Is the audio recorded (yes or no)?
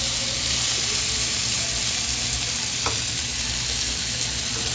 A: yes